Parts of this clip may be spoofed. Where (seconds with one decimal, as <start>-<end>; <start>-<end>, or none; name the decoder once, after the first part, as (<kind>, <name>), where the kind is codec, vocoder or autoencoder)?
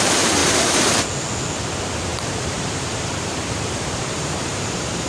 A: 0.4-1.0 (vocoder, BigVGAN v2); 2.1-5.1